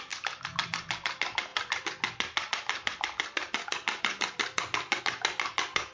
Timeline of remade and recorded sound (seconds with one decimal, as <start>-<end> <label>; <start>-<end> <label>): 0.0-5.9 recorded